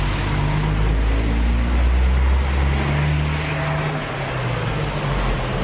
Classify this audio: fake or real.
real